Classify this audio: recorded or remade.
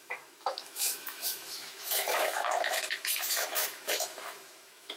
remade